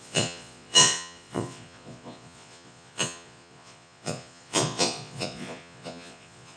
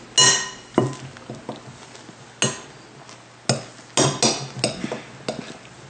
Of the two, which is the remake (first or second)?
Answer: first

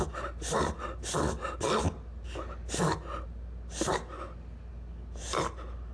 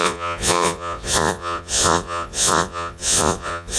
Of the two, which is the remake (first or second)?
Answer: second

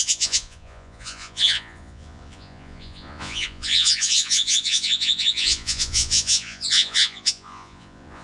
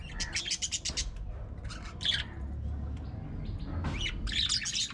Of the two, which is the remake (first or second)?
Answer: first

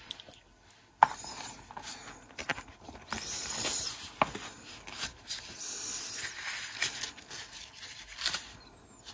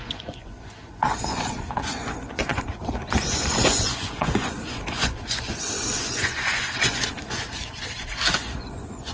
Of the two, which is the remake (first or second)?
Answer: second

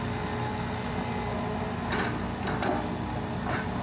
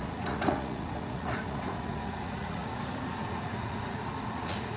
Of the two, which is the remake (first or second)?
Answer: second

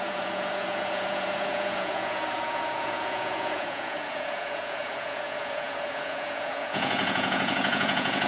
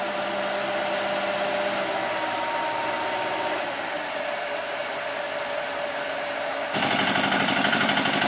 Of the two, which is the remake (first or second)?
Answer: first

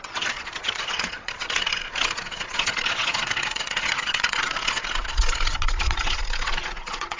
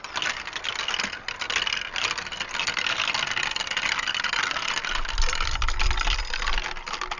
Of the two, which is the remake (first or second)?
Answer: first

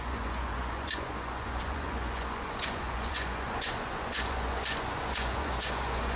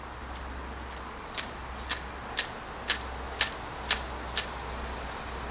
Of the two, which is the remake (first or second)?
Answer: first